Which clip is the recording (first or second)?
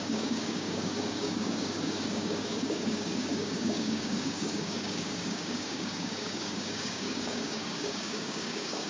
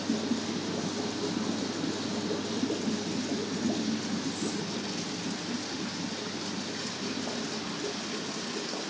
second